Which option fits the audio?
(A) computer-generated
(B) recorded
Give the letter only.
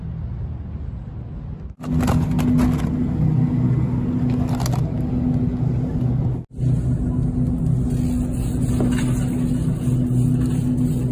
B